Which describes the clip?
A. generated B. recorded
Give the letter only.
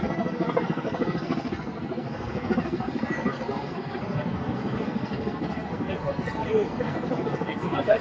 A